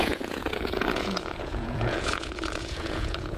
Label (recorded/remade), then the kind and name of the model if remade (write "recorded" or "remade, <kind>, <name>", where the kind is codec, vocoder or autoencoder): remade, vocoder, Vocos